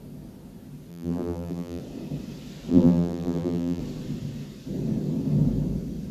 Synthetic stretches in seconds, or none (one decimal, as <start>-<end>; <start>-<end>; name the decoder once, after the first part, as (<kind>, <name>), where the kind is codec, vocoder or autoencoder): 0.9-1.8 (vocoder, BigVGAN v2); 2.7-3.8